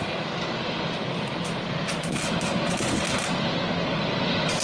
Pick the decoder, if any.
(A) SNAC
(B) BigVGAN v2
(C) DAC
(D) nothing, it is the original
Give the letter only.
D